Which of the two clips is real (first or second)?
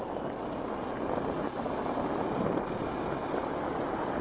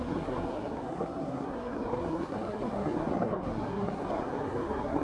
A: first